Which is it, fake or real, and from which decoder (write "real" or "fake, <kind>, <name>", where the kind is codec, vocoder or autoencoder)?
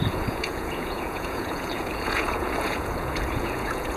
fake, vocoder, Vocos